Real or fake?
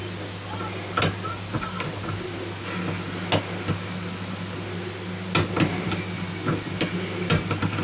real